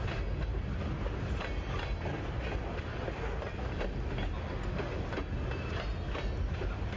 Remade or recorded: recorded